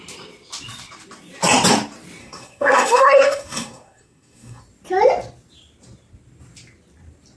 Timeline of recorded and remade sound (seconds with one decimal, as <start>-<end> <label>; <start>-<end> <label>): 0.0-2.2 recorded; 2.2-4.6 remade; 4.6-7.4 recorded